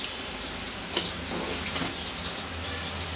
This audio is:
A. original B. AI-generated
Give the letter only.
A